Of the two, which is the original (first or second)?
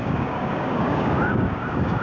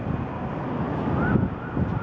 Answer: second